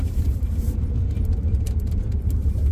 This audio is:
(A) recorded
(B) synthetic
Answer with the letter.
B